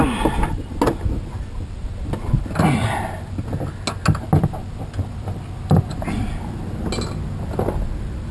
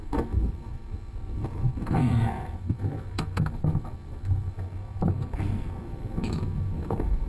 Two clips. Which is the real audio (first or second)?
first